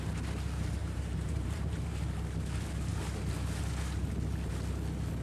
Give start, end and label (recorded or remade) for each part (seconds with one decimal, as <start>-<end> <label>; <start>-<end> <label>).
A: 0.0-0.8 recorded; 0.8-2.0 remade; 2.0-5.2 recorded